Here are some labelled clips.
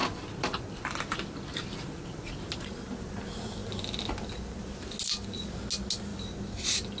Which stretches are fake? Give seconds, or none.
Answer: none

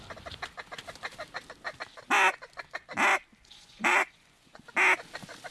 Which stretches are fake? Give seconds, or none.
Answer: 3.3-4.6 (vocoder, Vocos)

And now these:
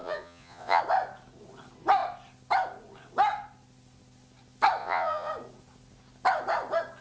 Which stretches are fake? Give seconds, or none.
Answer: 0.0-0.8 (vocoder, Vocos); 4.8-5.3

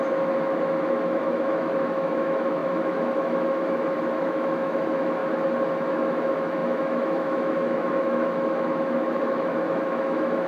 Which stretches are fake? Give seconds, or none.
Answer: 0.0-5.2 (autoencoder, DAC-VAE); 5.9-10.5

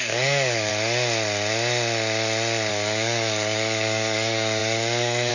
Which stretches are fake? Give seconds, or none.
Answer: 0.0-0.7 (codec, DAC); 2.7-5.3

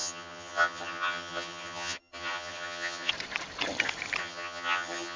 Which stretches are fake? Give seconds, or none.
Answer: 0.0-3.1 (vocoder, HiFi-GAN); 4.2-5.2

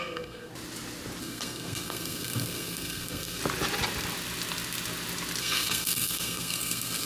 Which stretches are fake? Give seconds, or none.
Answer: 0.0-0.5 (codec, SNAC); 1.2-3.4; 5.4-7.1